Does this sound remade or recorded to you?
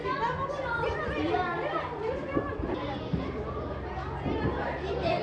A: remade